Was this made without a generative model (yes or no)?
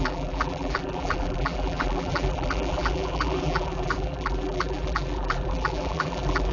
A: no